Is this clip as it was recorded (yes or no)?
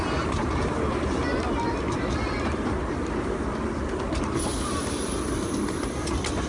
yes